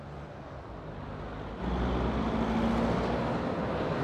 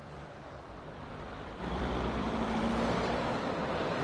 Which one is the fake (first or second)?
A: second